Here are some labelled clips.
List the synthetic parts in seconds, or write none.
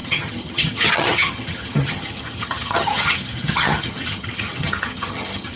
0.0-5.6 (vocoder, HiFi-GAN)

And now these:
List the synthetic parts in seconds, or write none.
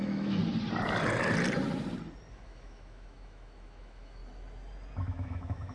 0.0-0.4 (autoencoder, DAC-VAE); 2.3-4.2; 5.0-5.7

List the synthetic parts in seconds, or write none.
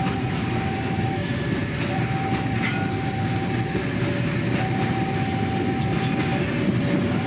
none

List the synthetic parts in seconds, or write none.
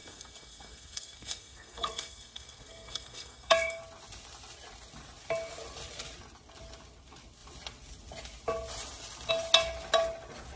0.0-3.8 (codec, SNAC)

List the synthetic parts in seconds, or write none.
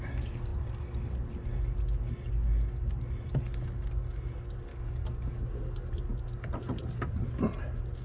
4.7-5.5 (codec, DAC)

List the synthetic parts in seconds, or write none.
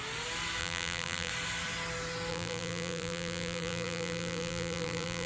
0.6-1.3 (vocoder, BigVGAN v2); 2.3-5.3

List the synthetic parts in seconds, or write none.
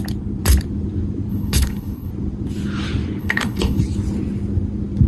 1.3-2.1 (codec, HILCodec); 3.2-3.8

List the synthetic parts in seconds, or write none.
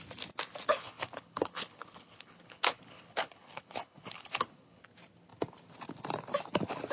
0.7-4.8 (codec, HILCodec)